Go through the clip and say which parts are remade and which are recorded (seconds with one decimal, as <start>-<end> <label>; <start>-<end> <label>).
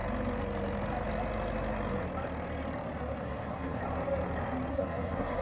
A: 0.0-3.2 recorded; 3.2-3.8 remade; 3.8-4.7 recorded; 4.7-5.4 remade